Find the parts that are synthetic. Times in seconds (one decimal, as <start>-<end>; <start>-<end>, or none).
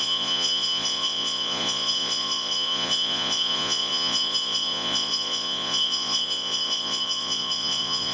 0.0-8.1